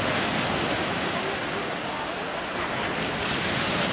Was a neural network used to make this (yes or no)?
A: no